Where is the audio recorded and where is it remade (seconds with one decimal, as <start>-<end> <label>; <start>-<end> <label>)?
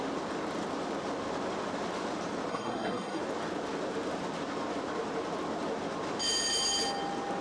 0.0-2.5 recorded; 2.5-3.2 remade; 3.2-7.4 recorded